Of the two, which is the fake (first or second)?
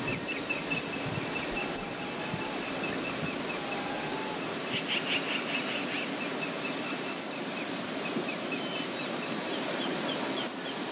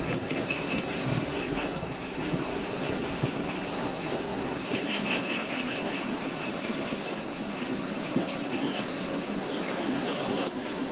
second